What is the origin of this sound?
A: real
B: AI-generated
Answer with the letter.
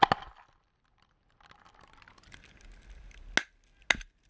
A